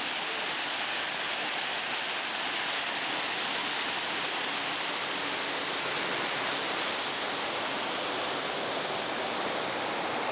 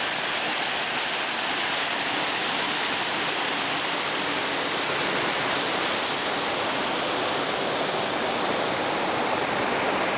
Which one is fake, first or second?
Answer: second